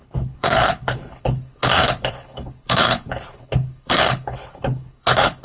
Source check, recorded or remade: remade